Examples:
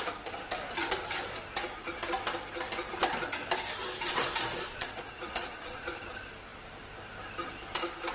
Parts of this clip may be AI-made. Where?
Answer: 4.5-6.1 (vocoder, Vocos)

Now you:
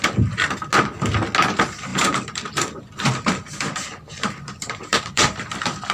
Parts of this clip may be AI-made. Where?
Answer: 1.9-5.4 (vocoder, BigVGAN v2)

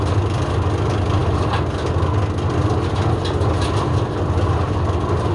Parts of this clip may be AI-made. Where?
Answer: none

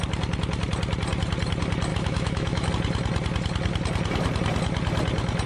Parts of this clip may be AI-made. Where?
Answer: 1.9-2.7 (autoencoder, DAC-VAE)

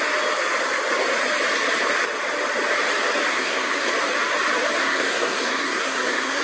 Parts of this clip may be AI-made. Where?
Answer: 3.3-3.9 (codec, SNAC); 4.8-6.4